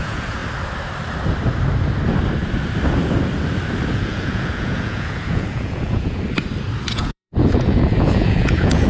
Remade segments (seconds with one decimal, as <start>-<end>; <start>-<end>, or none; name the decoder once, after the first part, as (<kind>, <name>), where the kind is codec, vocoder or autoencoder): 0.0-0.4 (vocoder, Vocos); 3.9-6.2; 6.9-8.9